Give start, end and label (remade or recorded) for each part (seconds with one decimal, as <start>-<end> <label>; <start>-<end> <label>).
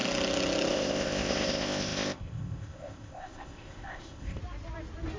0.0-0.7 recorded; 0.7-4.4 remade; 4.4-5.2 recorded